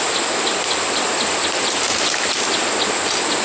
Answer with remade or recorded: recorded